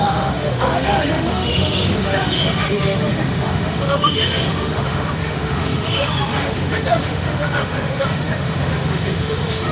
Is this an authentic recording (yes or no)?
no